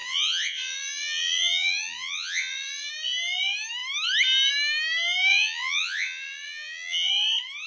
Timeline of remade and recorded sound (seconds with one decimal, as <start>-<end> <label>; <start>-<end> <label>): 0.0-2.9 remade; 2.9-5.3 recorded; 5.3-7.1 remade; 7.1-7.7 recorded